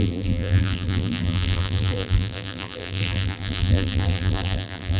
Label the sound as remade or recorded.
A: remade